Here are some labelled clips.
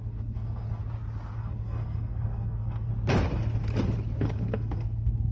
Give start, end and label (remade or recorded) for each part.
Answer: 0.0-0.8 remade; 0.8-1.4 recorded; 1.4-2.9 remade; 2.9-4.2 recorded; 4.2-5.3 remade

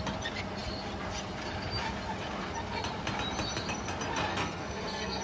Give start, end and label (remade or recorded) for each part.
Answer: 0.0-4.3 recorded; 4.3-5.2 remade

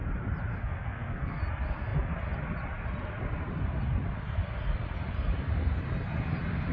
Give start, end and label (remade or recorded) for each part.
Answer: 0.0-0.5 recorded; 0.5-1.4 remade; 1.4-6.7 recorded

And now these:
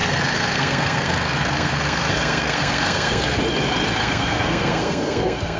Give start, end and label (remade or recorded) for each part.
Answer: 0.0-3.4 remade; 3.4-4.0 recorded; 4.0-5.6 remade

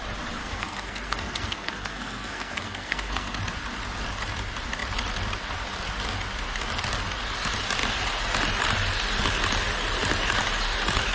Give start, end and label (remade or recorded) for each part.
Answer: 0.0-0.4 recorded; 0.4-3.4 remade; 3.4-11.1 recorded

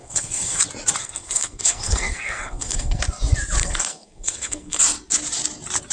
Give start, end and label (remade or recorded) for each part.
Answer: 0.0-0.6 remade; 0.6-1.0 recorded; 1.0-3.0 remade; 3.0-3.6 recorded; 3.6-4.8 remade; 4.8-5.9 recorded